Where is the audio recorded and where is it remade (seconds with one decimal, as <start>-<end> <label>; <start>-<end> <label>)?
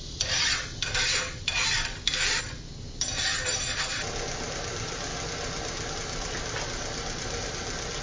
0.0-8.0 recorded